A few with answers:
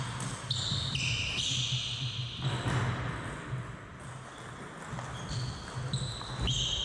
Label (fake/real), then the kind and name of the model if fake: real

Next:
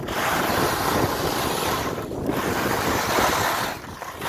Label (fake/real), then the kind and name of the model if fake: real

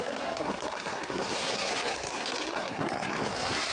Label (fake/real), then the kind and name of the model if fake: fake, codec, SNAC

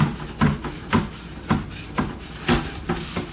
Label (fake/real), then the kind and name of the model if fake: real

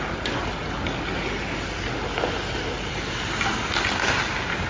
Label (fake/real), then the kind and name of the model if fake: real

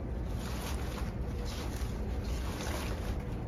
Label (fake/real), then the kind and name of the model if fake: real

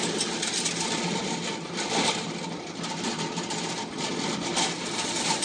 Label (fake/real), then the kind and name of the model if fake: real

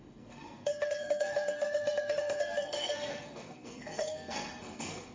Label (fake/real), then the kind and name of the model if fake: fake, codec, SNAC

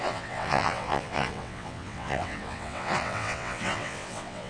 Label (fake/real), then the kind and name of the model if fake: fake, vocoder, WaveNeXt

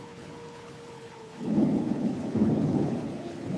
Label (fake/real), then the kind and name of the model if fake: fake, codec, HILCodec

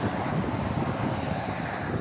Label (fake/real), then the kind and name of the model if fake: fake, vocoder, BigVGAN v2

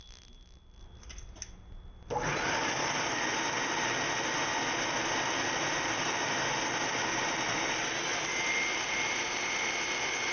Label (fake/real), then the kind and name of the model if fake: real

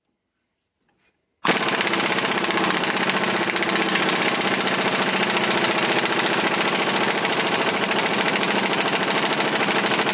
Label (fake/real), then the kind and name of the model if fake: real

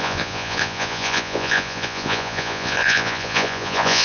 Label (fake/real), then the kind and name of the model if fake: fake, vocoder, Vocos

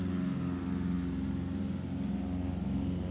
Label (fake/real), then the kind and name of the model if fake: real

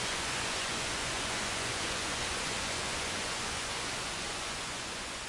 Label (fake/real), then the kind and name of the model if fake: fake, vocoder, Vocos